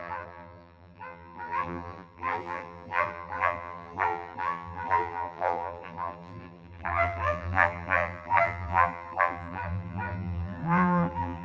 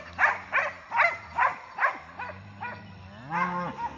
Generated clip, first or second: first